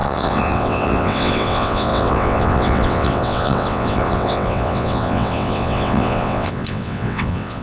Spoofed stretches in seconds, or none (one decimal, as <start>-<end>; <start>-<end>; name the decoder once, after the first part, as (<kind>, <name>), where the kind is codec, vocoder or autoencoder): 0.0-7.6 (vocoder, WaveNeXt)